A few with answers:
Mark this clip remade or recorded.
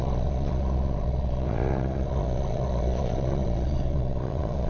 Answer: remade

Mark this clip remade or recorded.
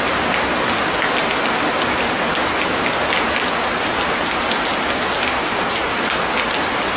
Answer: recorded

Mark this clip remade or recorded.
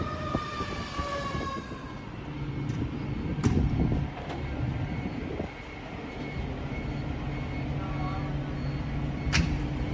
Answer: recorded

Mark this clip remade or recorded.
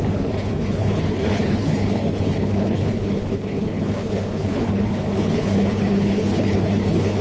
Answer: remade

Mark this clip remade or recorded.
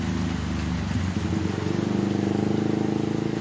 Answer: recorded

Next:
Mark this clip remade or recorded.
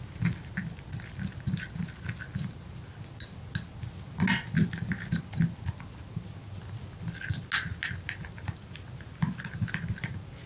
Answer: recorded